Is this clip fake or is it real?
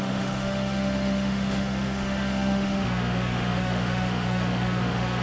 fake